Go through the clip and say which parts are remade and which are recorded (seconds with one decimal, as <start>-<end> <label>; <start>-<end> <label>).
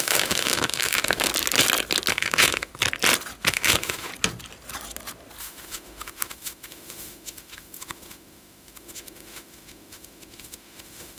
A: 0.0-1.3 remade; 1.3-2.1 recorded; 2.1-2.7 remade; 2.7-3.5 recorded; 3.5-4.1 remade; 4.1-5.4 recorded; 5.4-11.2 remade